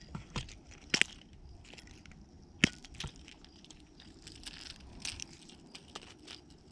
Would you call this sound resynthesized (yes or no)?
no